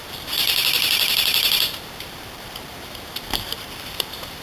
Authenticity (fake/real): fake